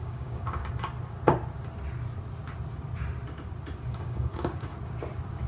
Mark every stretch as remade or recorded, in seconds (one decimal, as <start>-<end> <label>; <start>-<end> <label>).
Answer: 0.0-0.6 remade; 0.6-3.9 recorded; 3.9-4.7 remade; 4.7-5.5 recorded